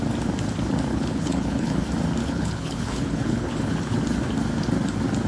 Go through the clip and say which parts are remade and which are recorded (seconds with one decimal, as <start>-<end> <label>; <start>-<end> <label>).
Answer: 0.0-0.9 recorded; 0.9-1.8 remade; 1.8-2.2 recorded; 2.2-4.0 remade; 4.0-5.3 recorded